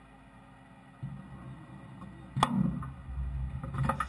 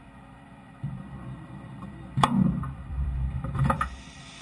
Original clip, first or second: first